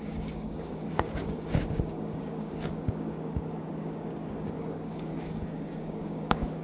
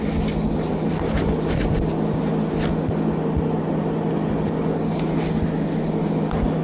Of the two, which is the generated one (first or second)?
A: first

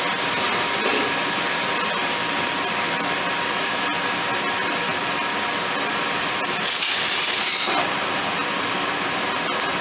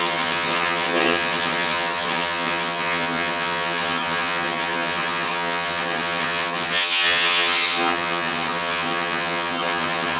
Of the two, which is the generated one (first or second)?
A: second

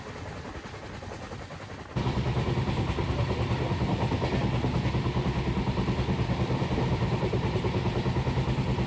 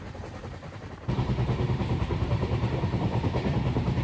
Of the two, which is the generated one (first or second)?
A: second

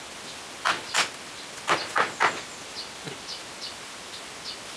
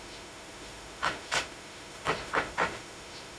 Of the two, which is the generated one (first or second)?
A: second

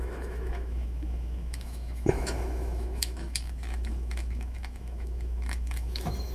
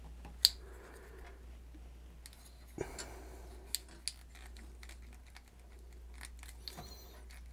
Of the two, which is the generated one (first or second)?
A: first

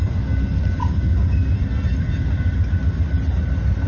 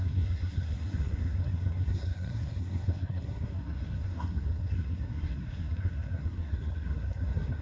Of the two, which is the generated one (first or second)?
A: second